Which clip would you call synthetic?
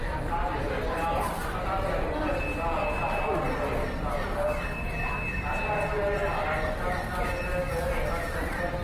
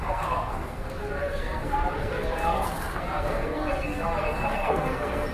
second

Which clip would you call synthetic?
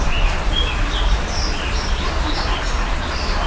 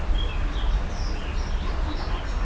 first